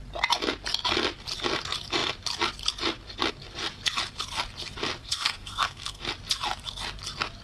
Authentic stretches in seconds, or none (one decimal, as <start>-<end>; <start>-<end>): 0.0-5.0; 6.0-7.4